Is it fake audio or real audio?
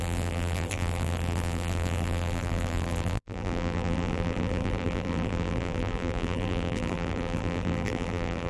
fake